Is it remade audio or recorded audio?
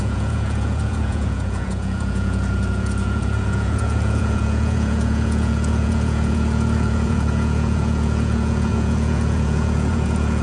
remade